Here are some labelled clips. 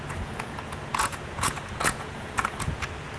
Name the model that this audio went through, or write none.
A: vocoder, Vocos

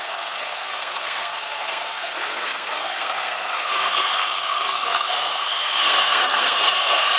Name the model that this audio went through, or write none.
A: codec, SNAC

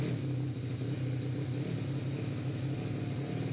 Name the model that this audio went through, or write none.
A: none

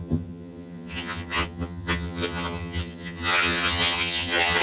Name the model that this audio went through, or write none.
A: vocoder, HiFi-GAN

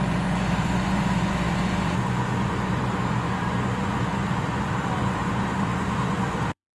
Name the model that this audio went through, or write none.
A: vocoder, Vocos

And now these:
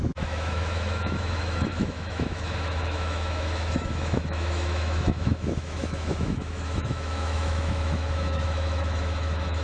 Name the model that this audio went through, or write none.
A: autoencoder, DAC-VAE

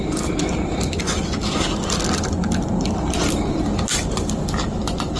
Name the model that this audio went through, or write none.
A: none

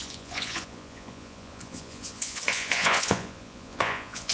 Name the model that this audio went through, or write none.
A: vocoder, Vocos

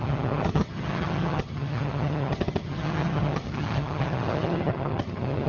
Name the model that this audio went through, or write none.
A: vocoder, HiFi-GAN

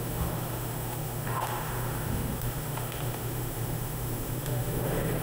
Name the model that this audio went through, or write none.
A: autoencoder, DAC-VAE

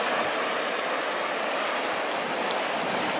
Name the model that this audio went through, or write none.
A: none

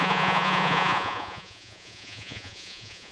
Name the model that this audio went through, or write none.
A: vocoder, Vocos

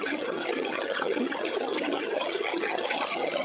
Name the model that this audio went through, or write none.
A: vocoder, HiFi-GAN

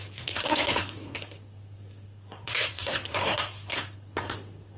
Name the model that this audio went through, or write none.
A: codec, SNAC